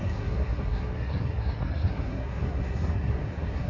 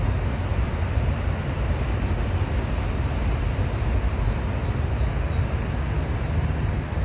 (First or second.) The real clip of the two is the second